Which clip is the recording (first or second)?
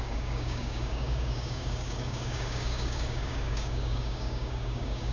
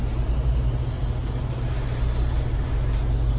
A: second